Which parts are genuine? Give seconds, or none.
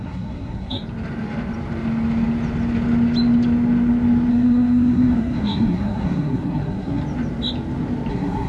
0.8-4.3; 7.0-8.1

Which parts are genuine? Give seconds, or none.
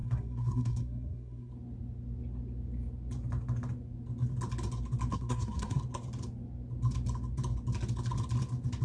1.5-5.1; 5.8-8.8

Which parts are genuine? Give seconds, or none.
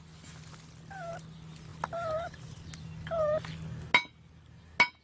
0.0-5.0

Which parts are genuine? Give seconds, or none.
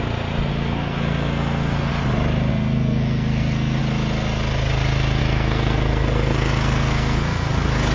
0.0-0.5; 1.9-2.5; 3.8-5.2; 7.5-7.9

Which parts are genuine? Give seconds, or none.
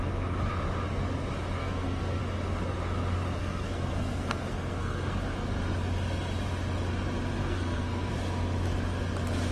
0.0-1.6; 2.2-3.4; 5.2-7.4; 8.1-9.5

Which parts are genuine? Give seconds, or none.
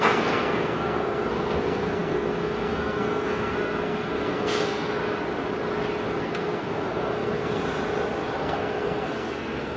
5.0-6.2; 7.6-8.4